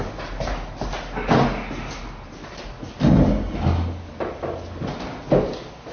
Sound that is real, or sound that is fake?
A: real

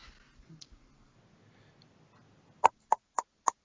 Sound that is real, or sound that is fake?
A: real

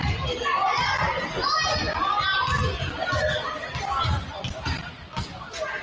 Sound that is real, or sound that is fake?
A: real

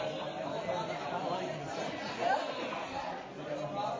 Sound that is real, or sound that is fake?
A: real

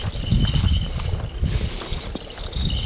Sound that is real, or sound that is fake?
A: real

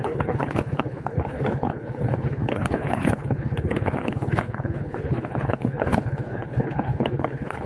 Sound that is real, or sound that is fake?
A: fake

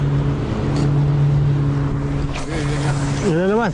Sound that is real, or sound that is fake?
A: real